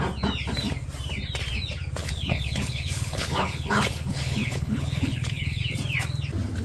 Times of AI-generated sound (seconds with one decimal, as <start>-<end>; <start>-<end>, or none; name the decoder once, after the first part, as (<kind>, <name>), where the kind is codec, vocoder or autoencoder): 2.0-5.6 (codec, HILCodec)